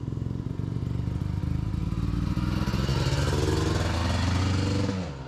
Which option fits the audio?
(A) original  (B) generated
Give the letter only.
A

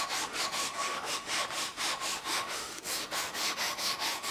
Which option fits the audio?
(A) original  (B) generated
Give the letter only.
B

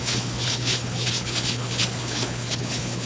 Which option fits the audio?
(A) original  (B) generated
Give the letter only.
B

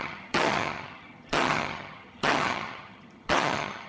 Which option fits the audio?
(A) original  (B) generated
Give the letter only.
B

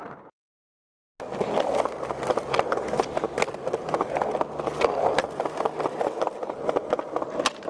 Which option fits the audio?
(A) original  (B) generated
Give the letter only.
A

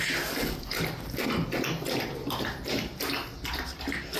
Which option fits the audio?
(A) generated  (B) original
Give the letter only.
B